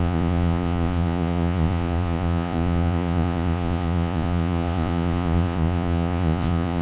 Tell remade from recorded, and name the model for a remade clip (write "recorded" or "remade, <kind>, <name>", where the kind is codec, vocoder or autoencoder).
remade, vocoder, Vocos